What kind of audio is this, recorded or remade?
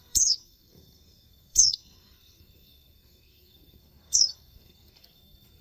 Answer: remade